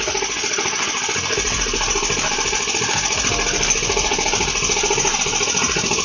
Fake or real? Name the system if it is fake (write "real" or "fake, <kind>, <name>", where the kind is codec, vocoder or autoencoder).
fake, vocoder, BigVGAN v2